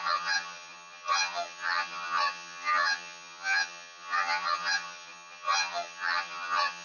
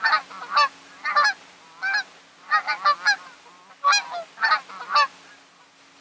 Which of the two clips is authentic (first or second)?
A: second